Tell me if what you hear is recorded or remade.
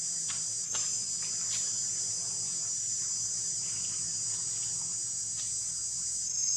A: recorded